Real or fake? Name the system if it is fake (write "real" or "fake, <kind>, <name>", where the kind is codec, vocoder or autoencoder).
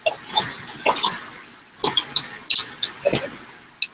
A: real